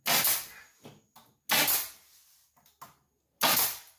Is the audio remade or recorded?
recorded